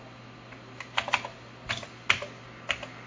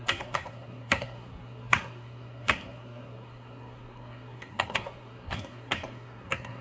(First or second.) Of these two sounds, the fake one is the second